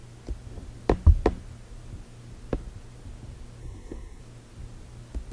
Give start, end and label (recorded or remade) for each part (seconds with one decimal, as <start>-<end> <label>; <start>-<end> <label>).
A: 0.0-3.6 recorded; 3.6-4.2 remade; 4.2-5.3 recorded